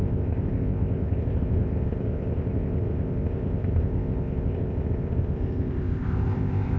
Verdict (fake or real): fake